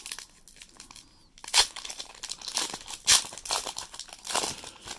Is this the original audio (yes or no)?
yes